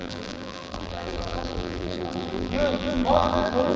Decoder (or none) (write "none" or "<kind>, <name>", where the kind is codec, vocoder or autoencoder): vocoder, BigVGAN v2